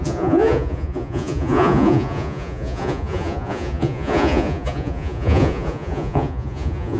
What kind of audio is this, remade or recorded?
remade